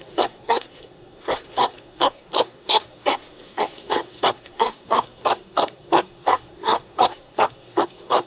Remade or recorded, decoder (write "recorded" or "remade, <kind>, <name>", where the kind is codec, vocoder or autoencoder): remade, codec, SNAC